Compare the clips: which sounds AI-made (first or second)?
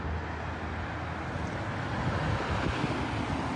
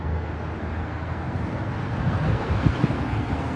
second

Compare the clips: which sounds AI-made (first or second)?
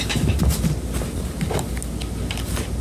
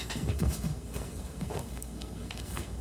second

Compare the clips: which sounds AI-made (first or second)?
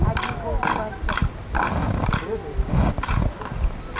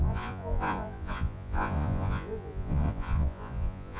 second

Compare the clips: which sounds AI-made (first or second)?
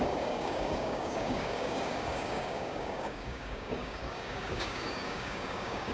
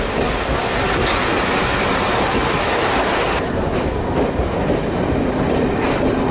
first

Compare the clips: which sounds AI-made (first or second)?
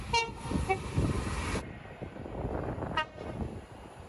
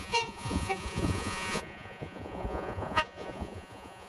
second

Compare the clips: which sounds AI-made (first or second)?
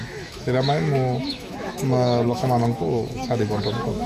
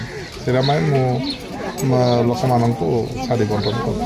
first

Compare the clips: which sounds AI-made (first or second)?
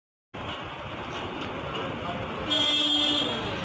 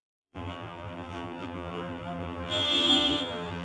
second